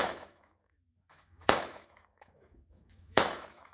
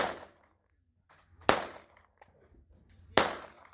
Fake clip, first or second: first